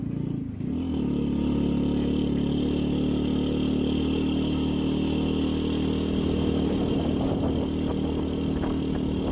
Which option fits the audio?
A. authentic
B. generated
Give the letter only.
A